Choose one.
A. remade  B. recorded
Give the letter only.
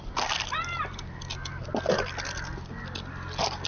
B